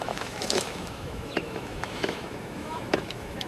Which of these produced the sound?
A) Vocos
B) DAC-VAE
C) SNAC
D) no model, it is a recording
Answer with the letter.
B